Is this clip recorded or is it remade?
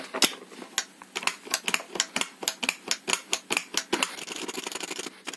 recorded